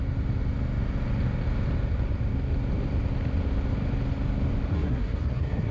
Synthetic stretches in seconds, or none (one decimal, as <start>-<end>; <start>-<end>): 4.7-5.7